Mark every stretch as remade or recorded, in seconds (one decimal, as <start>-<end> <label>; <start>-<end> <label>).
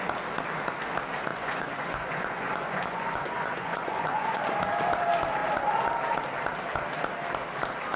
0.0-1.3 recorded; 1.3-4.4 remade; 4.4-8.0 recorded